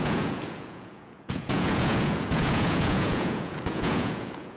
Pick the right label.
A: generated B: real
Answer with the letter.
A